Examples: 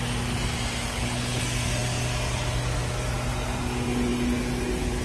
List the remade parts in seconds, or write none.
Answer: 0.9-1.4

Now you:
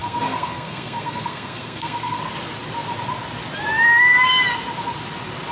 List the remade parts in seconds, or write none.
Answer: 0.0-2.2

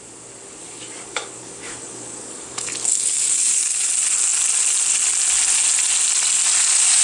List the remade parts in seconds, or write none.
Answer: 0.6-3.9